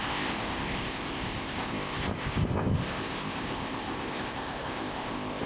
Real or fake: fake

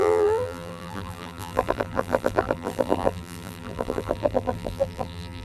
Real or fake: fake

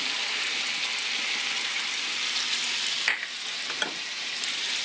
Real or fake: real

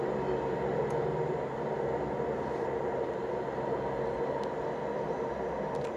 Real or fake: real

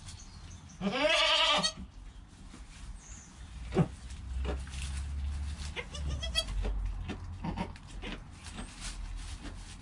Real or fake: real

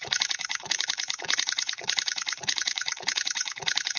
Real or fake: fake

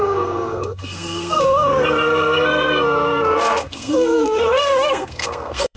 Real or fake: fake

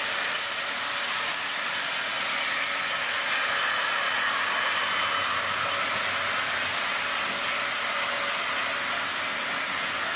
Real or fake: real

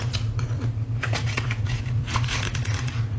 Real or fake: fake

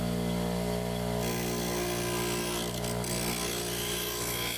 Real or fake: real